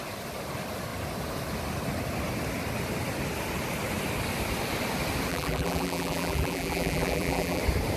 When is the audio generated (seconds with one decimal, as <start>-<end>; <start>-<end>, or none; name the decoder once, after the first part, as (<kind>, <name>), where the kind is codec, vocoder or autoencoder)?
5.3-7.6 (vocoder, BigVGAN v2)

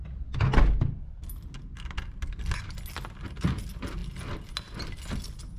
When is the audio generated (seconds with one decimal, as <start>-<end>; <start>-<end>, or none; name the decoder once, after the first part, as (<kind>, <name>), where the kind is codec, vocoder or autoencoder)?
none

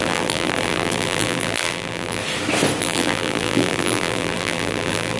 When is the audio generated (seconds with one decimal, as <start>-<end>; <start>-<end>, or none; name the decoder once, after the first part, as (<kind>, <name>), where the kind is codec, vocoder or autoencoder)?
0.0-2.2 (vocoder, BigVGAN v2); 2.8-5.2

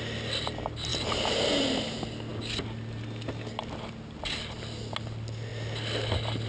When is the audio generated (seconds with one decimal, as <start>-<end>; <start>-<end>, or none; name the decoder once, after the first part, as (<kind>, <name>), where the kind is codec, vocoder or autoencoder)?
0.9-1.7 (vocoder, BigVGAN v2)

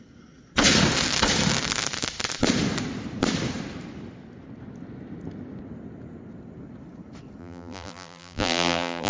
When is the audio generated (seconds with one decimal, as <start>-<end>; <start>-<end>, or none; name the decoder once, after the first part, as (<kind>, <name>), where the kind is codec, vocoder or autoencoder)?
7.4-9.1 (vocoder, BigVGAN v2)

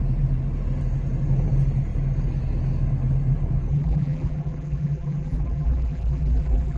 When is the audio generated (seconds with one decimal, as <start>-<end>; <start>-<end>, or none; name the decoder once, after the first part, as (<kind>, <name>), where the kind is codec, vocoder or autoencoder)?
3.7-6.8 (vocoder, BigVGAN v2)

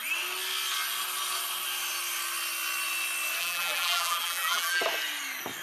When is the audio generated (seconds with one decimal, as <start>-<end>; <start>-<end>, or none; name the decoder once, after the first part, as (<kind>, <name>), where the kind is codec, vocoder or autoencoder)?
3.4-4.8 (vocoder, BigVGAN v2)